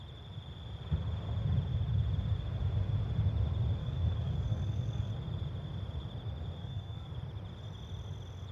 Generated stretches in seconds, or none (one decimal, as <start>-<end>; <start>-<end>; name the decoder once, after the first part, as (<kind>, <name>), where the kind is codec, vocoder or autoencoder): 3.8-5.1 (codec, SNAC); 6.6-7.1